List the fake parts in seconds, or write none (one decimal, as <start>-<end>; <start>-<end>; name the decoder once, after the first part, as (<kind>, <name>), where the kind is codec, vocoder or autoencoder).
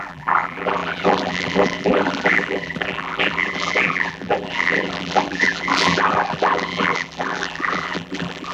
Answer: 0.0-8.5 (vocoder, BigVGAN v2)